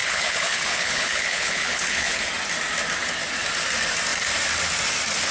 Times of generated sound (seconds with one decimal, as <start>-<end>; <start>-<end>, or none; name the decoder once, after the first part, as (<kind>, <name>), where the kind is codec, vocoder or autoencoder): 0.0-2.2 (codec, HILCodec)